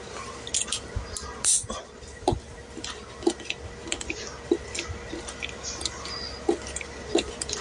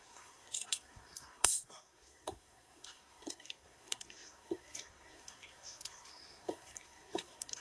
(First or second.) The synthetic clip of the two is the second